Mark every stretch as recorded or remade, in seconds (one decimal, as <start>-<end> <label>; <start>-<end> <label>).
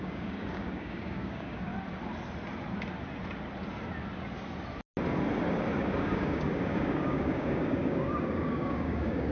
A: 0.0-1.7 remade; 1.7-5.8 recorded; 5.8-9.3 remade